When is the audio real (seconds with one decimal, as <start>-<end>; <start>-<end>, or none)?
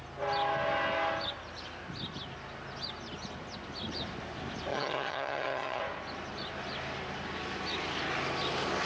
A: 0.0-4.7; 5.8-8.9